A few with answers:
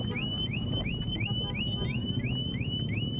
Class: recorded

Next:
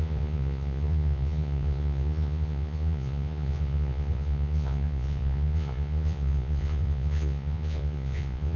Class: remade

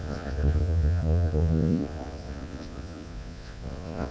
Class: remade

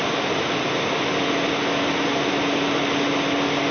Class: recorded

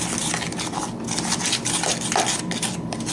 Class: recorded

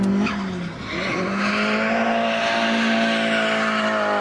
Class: recorded